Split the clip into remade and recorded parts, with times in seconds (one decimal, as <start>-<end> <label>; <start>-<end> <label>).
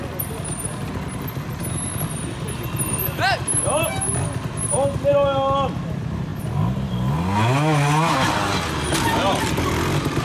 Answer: 0.0-10.2 recorded